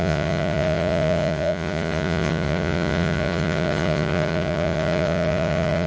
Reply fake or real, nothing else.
fake